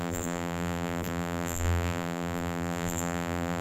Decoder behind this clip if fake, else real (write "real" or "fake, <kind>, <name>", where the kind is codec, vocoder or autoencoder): fake, vocoder, BigVGAN v2